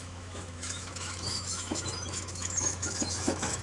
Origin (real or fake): fake